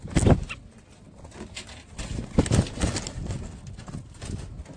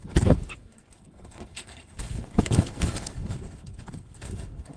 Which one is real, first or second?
first